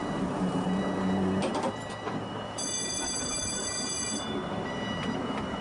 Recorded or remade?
remade